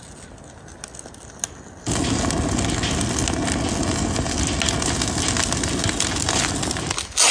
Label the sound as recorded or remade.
recorded